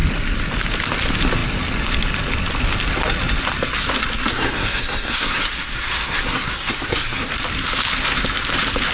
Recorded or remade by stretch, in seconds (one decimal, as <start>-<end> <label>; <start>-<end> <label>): 0.0-4.3 recorded; 4.3-7.3 remade; 7.3-8.9 recorded